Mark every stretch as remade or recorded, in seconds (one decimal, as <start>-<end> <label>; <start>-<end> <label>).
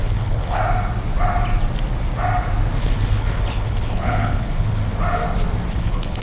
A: 0.0-0.6 remade; 0.6-2.8 recorded; 2.8-4.8 remade; 4.8-5.7 recorded; 5.7-6.2 remade